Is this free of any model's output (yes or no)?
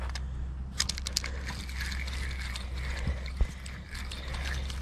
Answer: yes